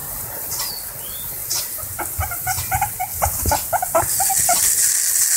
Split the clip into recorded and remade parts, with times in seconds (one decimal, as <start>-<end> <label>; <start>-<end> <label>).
0.0-0.7 remade; 0.7-1.4 recorded; 1.4-3.0 remade; 3.0-5.4 recorded